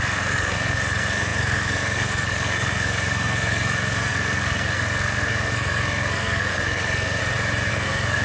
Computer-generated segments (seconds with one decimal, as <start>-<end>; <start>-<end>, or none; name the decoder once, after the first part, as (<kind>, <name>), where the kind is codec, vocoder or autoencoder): 0.0-7.2 (codec, SNAC); 7.7-8.2